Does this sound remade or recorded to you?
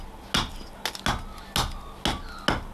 recorded